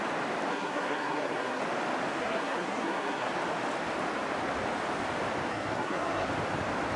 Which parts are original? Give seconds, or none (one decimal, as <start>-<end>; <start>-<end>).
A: 0.0-0.5; 1.6-2.2; 3.3-5.5; 6.3-7.0